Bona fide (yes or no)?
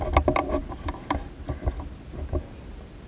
yes